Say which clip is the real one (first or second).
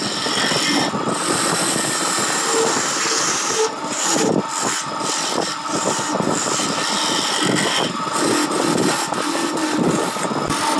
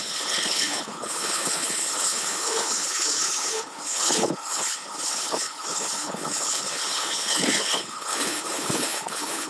first